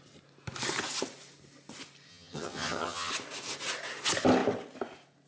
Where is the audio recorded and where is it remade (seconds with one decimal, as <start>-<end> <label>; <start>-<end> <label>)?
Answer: 0.0-2.1 recorded; 2.1-3.1 remade; 3.1-5.3 recorded